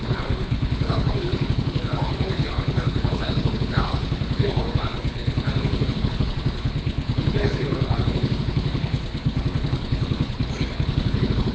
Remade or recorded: remade